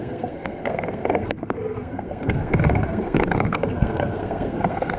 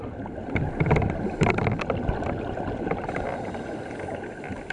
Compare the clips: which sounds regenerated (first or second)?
first